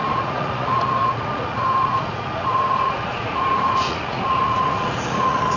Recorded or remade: remade